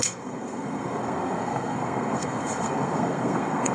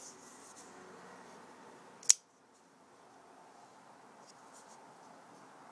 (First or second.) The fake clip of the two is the first